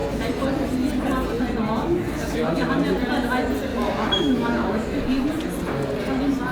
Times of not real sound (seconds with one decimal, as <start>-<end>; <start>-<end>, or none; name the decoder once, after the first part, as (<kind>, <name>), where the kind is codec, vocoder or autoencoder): 1.9-2.7 (autoencoder, DAC-VAE); 3.7-5.1

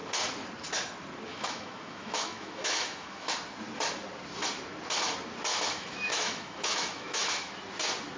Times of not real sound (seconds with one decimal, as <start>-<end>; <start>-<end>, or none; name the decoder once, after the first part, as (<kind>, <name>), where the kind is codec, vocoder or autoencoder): 1.3-3.3 (autoencoder, DAC-VAE); 5.5-7.6